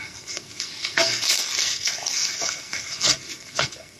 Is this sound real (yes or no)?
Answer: no